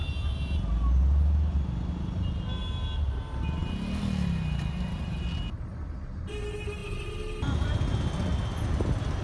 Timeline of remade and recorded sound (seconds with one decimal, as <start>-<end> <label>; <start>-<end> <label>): 0.0-9.2 recorded